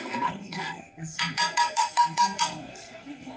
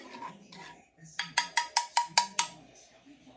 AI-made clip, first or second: first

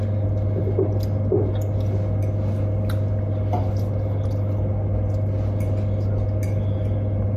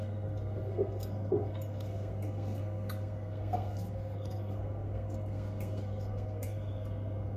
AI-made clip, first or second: second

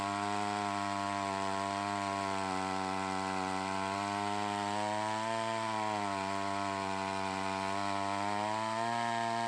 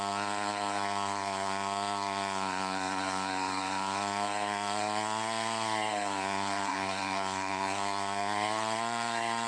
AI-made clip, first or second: second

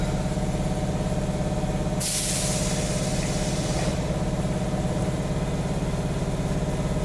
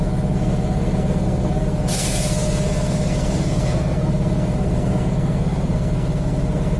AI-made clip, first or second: second